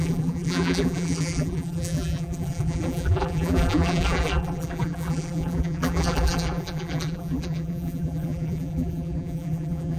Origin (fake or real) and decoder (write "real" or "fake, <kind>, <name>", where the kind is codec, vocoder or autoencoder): fake, vocoder, BigVGAN v2